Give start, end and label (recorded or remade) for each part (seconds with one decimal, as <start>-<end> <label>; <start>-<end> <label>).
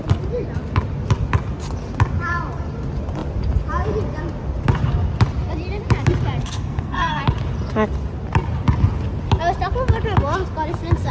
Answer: 0.0-6.4 recorded; 6.4-7.2 remade; 7.2-11.1 recorded